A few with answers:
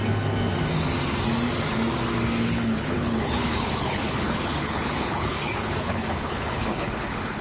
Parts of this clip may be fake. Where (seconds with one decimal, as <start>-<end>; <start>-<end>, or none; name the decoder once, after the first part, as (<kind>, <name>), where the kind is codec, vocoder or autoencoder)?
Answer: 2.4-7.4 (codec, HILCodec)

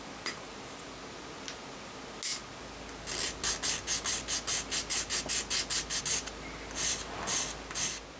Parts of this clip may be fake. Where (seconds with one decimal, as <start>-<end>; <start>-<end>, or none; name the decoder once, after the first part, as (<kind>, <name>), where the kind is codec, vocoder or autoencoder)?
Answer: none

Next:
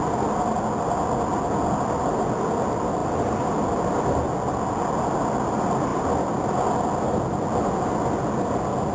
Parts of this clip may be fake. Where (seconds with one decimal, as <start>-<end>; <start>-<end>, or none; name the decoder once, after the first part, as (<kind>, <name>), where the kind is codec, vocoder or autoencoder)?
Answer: none

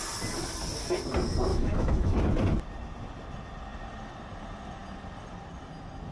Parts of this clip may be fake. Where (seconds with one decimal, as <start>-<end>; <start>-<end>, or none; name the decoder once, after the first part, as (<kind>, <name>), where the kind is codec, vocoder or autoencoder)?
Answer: 1.5-2.2 (autoencoder, DAC-VAE)

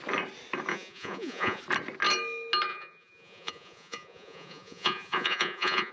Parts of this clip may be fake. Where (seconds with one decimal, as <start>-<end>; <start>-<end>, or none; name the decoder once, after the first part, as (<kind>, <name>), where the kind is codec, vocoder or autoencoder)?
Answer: 0.7-1.6 (vocoder, Vocos); 2.7-5.9